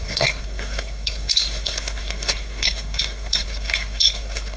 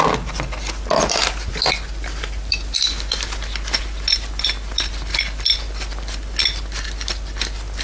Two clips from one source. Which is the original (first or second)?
second